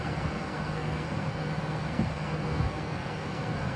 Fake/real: fake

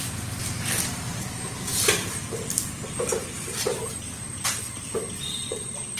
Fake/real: fake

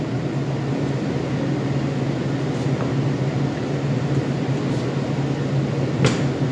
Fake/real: real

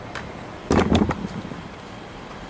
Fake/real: fake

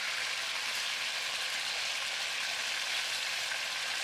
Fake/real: real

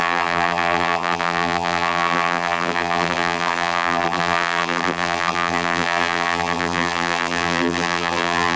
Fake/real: fake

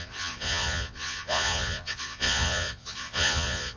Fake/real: fake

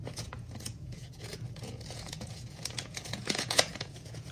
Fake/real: fake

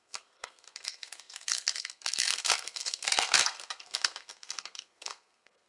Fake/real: fake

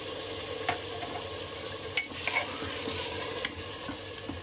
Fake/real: real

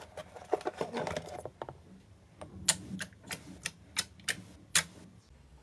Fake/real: real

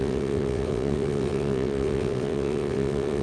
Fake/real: fake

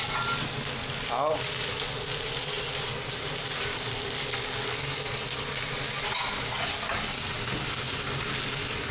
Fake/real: real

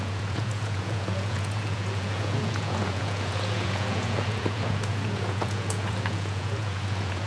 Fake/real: fake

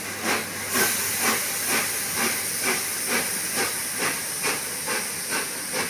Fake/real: real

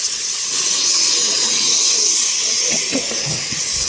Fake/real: fake